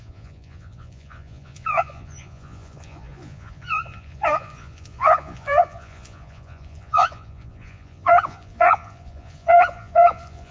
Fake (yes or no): yes